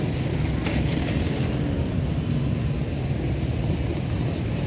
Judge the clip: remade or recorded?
recorded